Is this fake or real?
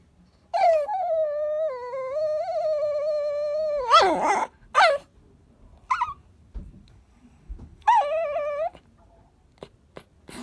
real